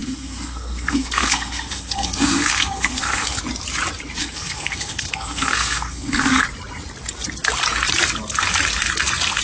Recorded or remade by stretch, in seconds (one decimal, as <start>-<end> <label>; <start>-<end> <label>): 0.0-3.4 remade; 3.4-4.2 recorded; 4.2-6.4 remade; 6.4-9.4 recorded